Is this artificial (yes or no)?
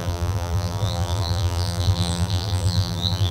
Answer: yes